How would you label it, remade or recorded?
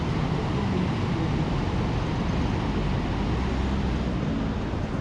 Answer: recorded